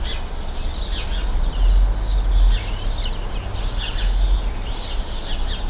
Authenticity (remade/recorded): recorded